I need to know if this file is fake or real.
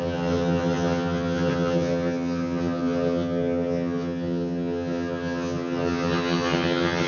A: fake